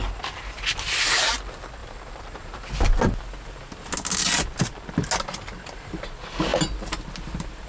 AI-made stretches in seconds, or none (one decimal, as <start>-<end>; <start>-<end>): 1.8-2.7